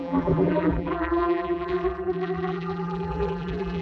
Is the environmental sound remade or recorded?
remade